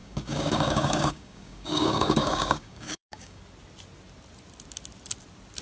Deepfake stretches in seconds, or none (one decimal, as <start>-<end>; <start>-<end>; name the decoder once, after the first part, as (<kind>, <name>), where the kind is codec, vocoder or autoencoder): 0.0-3.4 (codec, DAC)